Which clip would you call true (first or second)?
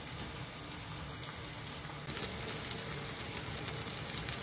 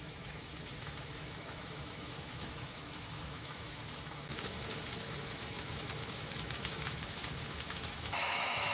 first